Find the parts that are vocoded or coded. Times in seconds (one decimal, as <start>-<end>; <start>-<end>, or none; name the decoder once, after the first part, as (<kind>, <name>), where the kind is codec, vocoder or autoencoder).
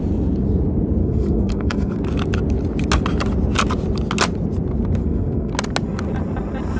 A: 1.0-2.0 (codec, SNAC); 5.0-5.5